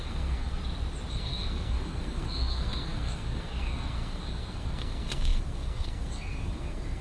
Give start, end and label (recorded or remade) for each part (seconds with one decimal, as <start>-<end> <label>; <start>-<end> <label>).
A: 0.0-0.6 remade; 0.6-1.1 recorded; 1.1-7.0 remade